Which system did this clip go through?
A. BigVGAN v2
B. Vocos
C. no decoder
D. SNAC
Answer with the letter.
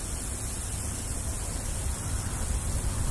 C